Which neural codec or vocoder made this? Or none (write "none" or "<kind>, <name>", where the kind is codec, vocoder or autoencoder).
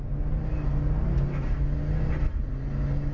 none